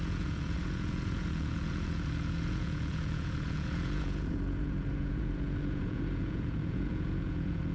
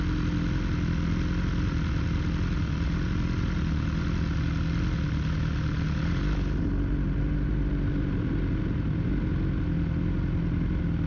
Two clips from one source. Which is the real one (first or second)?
second